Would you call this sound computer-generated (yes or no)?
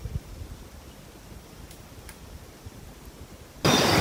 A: no